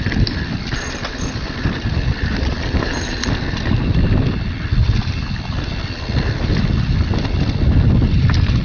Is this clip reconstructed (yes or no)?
no